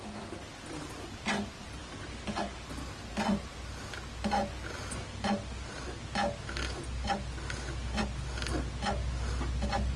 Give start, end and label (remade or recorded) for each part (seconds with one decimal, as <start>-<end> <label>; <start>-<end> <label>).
0.0-10.0 recorded